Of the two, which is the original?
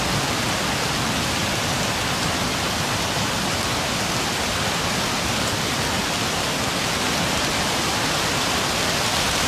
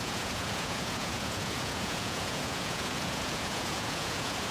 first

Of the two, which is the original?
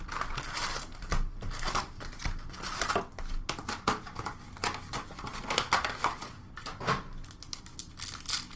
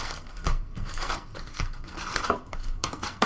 first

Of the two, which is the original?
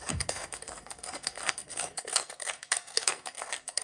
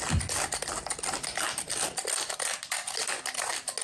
second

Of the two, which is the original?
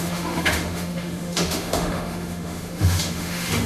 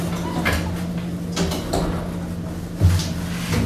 second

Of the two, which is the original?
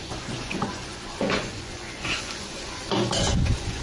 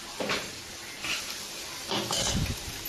second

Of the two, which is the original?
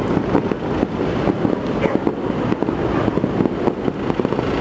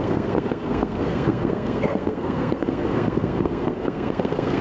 first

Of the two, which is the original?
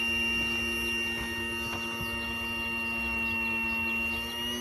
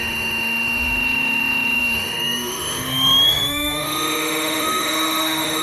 first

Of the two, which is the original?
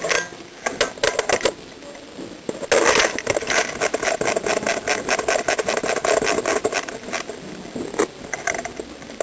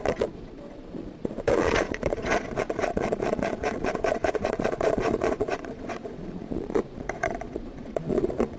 first